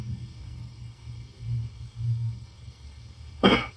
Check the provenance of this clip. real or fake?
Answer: fake